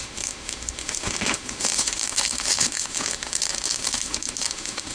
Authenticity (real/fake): fake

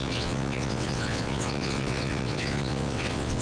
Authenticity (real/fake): fake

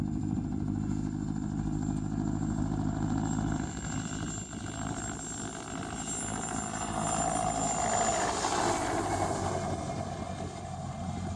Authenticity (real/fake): real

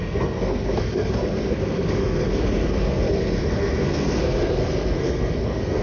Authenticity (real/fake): fake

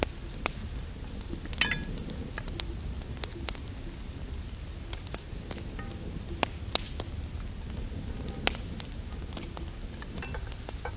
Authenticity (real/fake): real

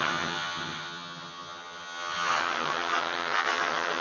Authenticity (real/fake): fake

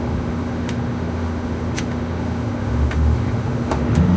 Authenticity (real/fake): fake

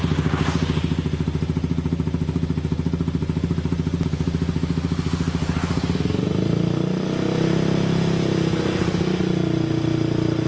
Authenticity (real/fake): real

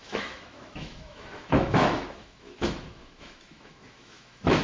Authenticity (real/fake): fake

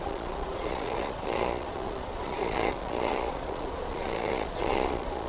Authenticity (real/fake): fake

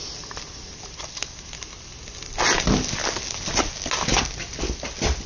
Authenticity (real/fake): real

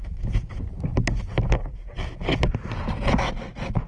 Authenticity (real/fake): real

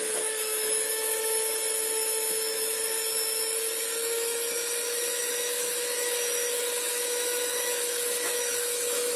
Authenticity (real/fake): fake